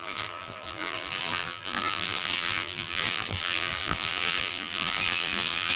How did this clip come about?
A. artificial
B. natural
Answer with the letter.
A